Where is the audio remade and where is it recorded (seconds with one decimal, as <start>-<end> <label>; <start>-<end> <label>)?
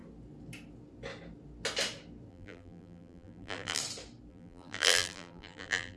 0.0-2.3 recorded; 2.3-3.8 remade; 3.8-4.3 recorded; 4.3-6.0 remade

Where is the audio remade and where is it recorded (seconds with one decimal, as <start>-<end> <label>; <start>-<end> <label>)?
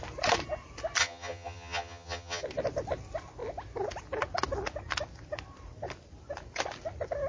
0.0-1.0 recorded; 1.0-2.4 remade; 2.4-7.3 recorded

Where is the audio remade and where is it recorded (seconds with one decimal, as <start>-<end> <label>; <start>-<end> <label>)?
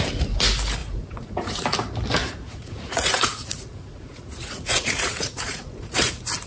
0.0-0.8 recorded; 0.8-1.6 remade; 1.6-2.2 recorded; 2.2-6.1 remade; 6.1-6.5 recorded